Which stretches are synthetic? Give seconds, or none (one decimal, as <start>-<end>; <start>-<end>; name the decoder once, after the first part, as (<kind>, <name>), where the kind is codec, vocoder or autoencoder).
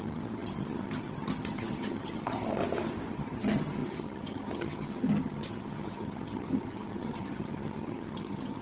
0.0-2.6 (vocoder, HiFi-GAN); 3.1-8.6